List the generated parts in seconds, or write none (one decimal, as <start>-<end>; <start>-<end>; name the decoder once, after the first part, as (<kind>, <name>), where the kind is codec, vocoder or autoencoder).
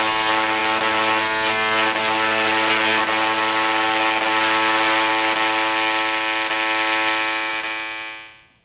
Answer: none